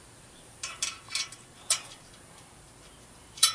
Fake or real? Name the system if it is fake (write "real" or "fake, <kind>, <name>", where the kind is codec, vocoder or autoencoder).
fake, vocoder, BigVGAN v2